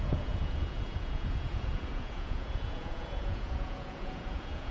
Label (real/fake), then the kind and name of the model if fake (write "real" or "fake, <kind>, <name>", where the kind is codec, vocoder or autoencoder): fake, vocoder, Vocos